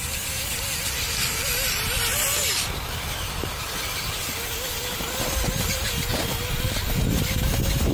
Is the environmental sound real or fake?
real